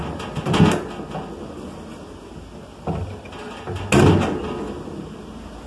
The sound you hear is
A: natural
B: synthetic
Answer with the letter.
A